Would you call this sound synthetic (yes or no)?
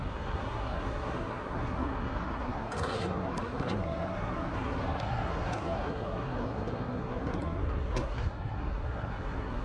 yes